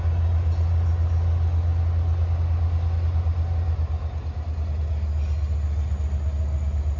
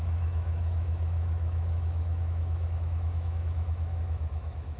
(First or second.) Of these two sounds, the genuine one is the first